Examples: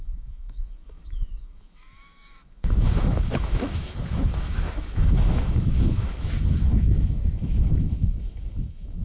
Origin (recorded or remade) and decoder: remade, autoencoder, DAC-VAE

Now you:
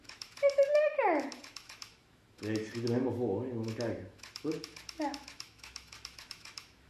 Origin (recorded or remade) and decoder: remade, autoencoder, DAC-VAE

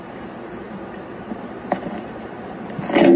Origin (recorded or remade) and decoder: recorded